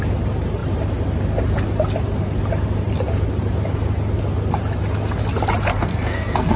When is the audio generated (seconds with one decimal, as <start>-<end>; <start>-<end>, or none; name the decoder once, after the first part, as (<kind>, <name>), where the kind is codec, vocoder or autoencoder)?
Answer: 5.7-6.6 (codec, SNAC)